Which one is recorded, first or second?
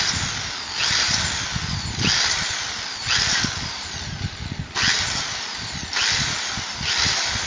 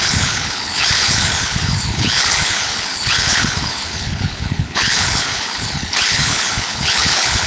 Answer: first